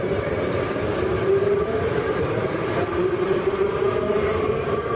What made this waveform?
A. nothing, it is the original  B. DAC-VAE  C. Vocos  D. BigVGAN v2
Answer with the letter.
D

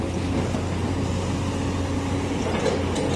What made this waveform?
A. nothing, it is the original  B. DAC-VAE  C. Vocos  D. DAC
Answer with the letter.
A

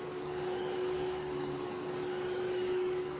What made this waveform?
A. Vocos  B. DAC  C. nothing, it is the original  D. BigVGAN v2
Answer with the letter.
B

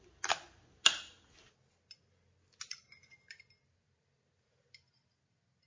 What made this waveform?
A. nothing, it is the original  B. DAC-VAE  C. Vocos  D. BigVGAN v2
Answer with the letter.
A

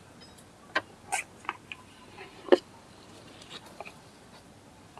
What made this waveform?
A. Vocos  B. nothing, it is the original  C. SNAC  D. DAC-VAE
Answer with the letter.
B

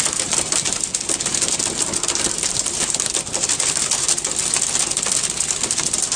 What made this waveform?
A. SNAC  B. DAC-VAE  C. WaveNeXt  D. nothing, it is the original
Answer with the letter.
D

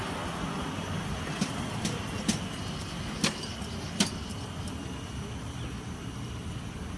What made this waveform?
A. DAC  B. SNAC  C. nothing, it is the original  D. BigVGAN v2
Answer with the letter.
C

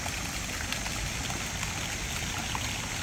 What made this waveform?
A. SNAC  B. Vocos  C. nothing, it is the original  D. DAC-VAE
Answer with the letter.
C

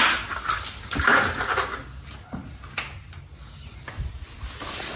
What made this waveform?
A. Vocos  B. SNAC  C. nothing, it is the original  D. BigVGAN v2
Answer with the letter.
C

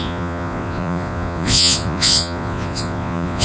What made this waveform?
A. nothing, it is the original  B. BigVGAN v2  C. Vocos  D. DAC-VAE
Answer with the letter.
C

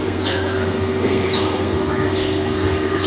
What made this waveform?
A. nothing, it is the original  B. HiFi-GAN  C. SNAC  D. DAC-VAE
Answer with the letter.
C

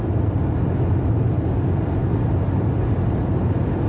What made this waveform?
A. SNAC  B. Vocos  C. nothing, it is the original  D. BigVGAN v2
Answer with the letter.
C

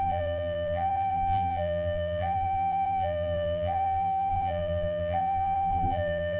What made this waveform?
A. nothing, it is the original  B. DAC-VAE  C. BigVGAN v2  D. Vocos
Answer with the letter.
C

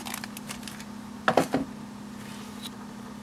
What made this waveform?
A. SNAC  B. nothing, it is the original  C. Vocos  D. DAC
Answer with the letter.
B